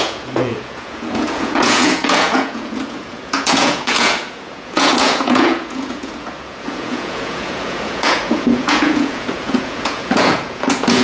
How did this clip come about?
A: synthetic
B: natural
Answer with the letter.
A